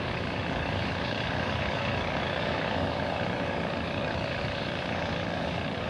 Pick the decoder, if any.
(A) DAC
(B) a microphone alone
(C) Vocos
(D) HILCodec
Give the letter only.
A